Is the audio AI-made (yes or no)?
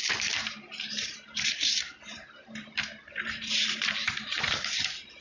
yes